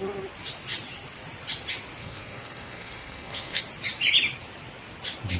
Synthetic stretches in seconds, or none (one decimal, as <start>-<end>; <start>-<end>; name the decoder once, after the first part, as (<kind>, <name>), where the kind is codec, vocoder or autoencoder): 2.0-3.6 (codec, SNAC)